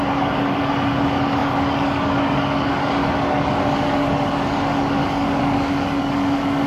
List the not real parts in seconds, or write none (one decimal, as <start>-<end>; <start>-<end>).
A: 0.0-6.7